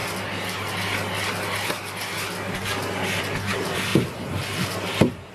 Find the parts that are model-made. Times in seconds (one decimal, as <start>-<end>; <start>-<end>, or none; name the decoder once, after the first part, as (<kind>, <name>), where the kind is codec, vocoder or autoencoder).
3.2-3.9 (vocoder, BigVGAN v2)